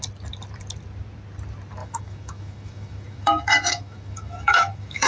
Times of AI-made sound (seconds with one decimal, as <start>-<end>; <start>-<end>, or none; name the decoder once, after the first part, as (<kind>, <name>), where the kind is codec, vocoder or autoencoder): 1.8-5.1 (autoencoder, DAC-VAE)

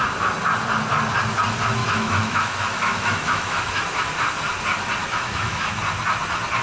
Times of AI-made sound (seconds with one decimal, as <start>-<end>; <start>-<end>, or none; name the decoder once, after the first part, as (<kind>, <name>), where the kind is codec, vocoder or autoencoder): 1.8-3.8 (autoencoder, DAC-VAE); 5.0-5.8

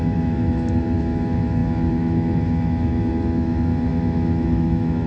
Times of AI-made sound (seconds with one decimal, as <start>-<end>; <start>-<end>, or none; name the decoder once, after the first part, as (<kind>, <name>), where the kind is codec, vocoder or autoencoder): 0.0-5.1 (autoencoder, DAC-VAE)

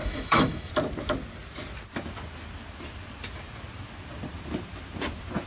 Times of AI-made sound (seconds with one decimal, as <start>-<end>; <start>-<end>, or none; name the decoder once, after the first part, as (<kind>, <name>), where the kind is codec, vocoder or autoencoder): 0.0-0.7 (autoencoder, DAC-VAE)

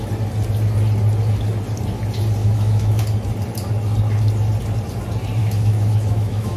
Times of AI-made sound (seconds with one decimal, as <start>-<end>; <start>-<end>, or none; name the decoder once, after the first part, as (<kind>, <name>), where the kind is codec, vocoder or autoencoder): 2.4-3.0 (autoencoder, DAC-VAE); 5.4-6.6